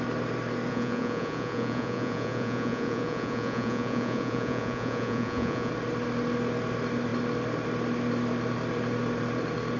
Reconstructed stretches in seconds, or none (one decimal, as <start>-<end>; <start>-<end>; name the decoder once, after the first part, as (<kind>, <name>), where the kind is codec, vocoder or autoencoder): 0.7-5.7 (vocoder, Vocos)